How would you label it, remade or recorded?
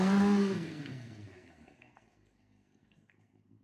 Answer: remade